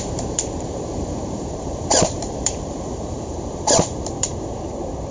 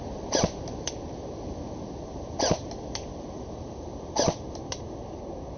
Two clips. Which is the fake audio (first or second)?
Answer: first